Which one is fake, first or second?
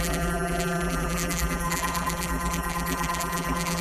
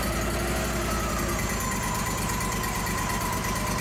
first